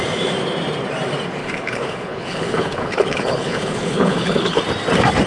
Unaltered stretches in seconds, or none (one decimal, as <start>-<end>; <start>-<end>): 0.0-1.4; 4.6-5.3